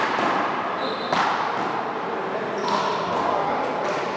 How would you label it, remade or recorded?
recorded